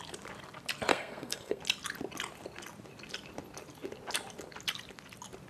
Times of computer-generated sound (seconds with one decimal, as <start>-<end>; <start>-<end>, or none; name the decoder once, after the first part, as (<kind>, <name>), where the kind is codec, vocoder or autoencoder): 0.9-1.6 (codec, SNAC)